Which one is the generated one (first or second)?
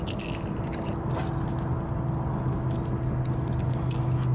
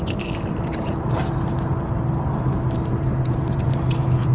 second